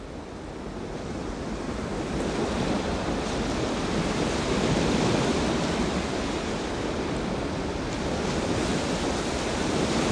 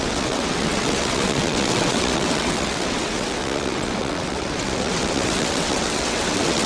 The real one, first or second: first